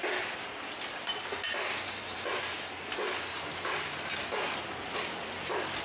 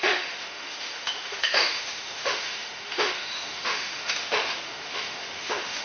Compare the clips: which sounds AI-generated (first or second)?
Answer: second